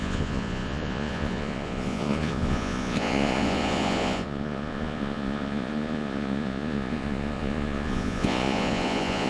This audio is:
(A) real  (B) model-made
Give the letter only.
B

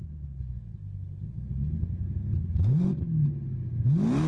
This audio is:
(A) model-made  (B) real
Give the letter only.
B